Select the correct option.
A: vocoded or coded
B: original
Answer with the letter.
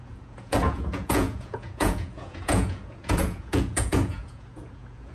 A